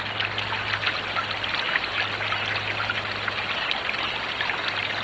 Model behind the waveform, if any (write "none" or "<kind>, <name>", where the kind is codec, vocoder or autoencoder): none